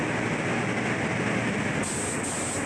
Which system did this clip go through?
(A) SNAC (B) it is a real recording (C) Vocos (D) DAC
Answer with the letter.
B